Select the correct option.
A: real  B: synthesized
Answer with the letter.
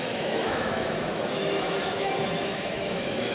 B